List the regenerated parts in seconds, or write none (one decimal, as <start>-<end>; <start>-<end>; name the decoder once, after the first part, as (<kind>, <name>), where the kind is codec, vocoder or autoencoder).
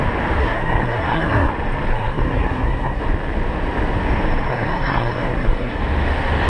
0.4-1.5 (codec, SNAC); 1.9-3.0; 4.5-5.8